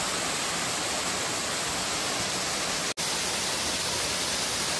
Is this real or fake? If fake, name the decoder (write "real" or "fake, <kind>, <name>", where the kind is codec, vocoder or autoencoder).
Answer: real